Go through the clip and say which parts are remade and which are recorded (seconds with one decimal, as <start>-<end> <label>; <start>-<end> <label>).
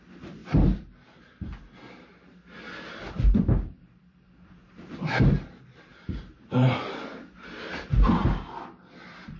0.0-0.4 recorded; 0.4-1.2 remade; 1.2-5.9 recorded; 5.9-7.6 remade; 7.6-9.4 recorded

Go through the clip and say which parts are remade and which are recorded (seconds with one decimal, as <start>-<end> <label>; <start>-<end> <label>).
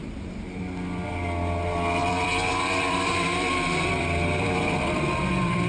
0.0-0.6 remade; 0.6-2.0 recorded; 2.0-5.7 remade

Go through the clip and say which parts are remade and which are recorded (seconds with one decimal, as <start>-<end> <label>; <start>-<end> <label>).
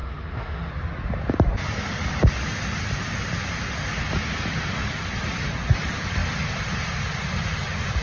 0.0-0.7 remade; 0.7-8.0 recorded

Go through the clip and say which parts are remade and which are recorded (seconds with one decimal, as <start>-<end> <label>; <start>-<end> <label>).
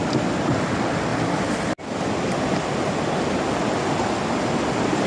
0.0-5.1 recorded